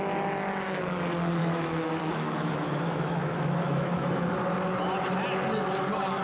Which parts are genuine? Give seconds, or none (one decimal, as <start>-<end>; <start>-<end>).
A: 0.0-1.4; 4.3-6.2